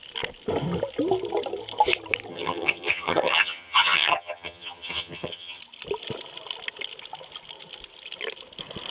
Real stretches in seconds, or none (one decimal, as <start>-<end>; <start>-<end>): 0.0-2.3; 5.6-8.9